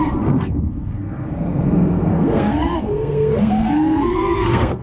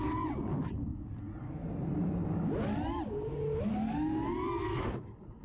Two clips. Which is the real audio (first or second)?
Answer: second